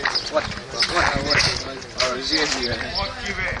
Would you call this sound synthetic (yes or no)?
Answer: no